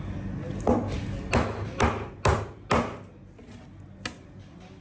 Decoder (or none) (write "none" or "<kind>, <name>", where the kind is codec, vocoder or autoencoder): none